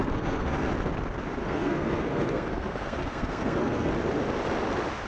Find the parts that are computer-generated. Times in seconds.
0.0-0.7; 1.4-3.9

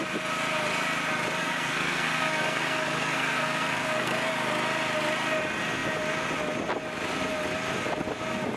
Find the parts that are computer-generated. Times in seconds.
1.4-4.3